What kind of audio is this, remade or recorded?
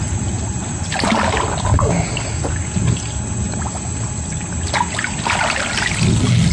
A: recorded